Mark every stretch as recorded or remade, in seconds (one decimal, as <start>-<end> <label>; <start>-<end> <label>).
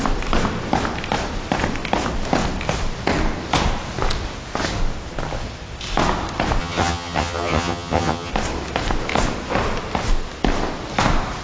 0.0-6.6 recorded; 6.6-8.3 remade; 8.3-11.4 recorded